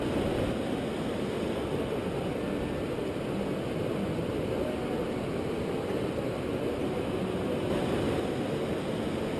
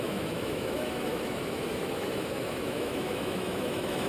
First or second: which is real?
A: first